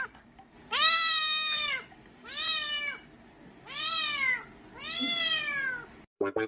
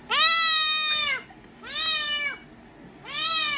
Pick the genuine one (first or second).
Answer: second